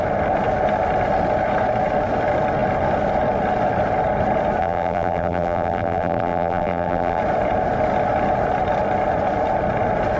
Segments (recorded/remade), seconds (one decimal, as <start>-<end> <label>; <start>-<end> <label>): 0.0-4.6 recorded; 4.6-7.2 remade; 7.2-10.2 recorded